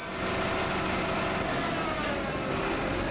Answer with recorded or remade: recorded